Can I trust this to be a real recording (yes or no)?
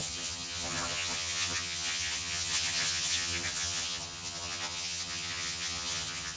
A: no